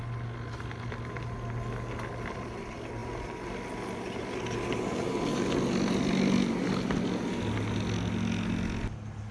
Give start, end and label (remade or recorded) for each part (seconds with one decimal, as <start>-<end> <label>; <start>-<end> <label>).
0.0-9.3 recorded